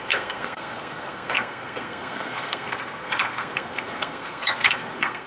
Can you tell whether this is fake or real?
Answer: fake